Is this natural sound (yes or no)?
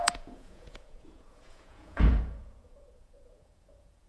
no